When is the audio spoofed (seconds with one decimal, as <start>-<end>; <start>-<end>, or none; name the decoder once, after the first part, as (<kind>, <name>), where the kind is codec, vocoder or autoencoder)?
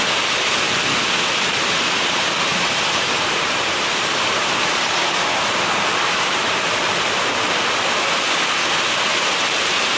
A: 2.5-7.1 (vocoder, BigVGAN v2); 9.1-10.0